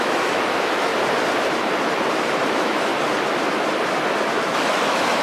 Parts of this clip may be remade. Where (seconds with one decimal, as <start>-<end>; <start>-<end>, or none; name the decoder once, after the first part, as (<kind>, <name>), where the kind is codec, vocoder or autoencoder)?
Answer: 0.0-0.9 (autoencoder, DAC-VAE); 2.5-2.9; 4.4-5.2